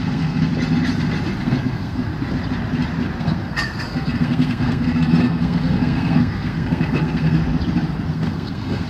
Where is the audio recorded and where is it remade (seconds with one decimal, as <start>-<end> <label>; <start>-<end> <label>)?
0.0-0.5 remade; 0.5-1.4 recorded; 1.4-2.1 remade; 2.1-3.2 recorded; 3.2-7.4 remade; 7.4-8.1 recorded; 8.1-8.9 remade